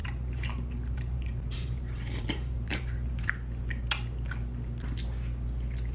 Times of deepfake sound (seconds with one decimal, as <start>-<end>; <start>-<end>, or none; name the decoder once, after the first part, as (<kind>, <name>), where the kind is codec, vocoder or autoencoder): 0.0-3.3 (vocoder, BigVGAN v2)